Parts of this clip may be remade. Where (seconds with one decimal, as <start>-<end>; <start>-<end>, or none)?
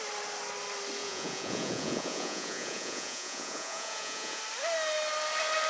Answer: 1.0-4.4